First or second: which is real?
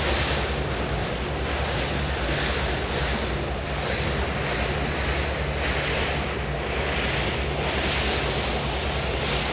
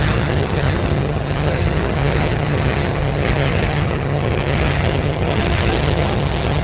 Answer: first